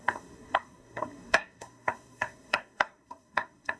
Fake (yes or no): yes